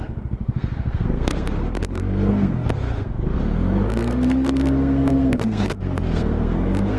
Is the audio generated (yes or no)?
yes